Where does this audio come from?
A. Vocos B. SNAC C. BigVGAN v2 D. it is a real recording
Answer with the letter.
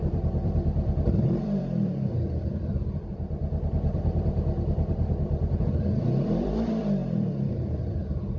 C